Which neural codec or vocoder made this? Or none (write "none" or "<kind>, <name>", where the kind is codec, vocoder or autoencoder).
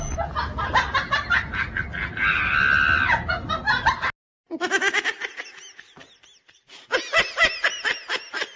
none